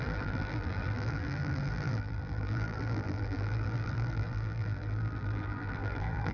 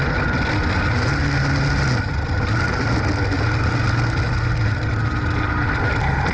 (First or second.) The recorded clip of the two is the second